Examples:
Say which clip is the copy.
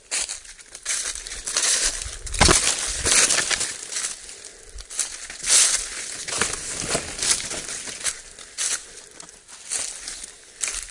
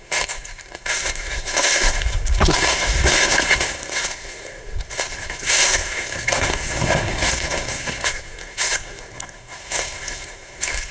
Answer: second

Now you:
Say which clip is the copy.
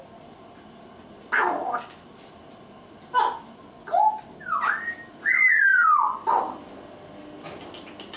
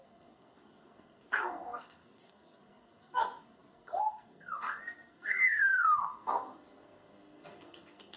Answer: second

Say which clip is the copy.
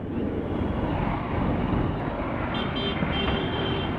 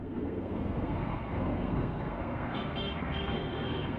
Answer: second